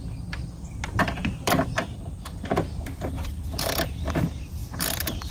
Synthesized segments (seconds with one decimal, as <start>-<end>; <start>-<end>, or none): 1.2-3.9; 4.6-5.3

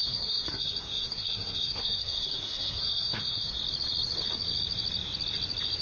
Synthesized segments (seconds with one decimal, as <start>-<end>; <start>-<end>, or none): 0.0-3.5

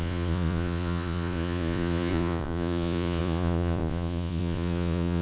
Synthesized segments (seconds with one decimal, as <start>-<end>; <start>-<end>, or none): 0.0-5.2

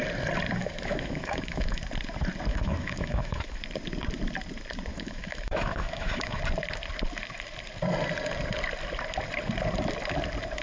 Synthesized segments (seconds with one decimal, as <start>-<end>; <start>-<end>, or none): 0.6-1.8; 2.5-3.6; 4.9-6.4

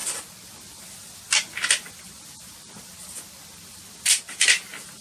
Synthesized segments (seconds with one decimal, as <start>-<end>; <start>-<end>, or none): none